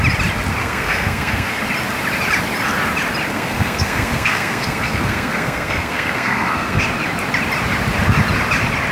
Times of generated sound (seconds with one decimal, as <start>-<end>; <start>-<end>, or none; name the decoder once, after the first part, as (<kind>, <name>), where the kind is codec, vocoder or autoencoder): 0.6-1.6 (codec, SNAC); 3.3-6.8